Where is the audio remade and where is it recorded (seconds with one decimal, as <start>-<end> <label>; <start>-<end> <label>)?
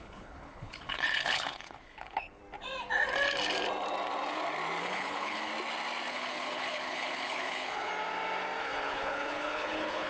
0.0-2.4 remade; 2.4-4.8 recorded; 4.8-5.5 remade; 5.5-6.1 recorded; 6.1-7.9 remade; 7.9-8.6 recorded; 8.6-10.1 remade